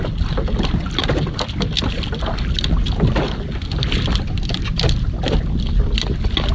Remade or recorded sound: recorded